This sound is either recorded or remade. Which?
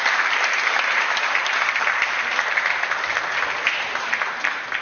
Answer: recorded